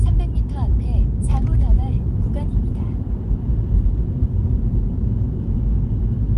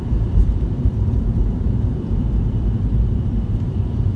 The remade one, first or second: second